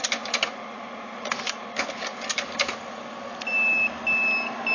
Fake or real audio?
real